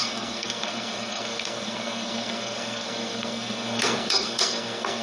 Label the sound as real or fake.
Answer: fake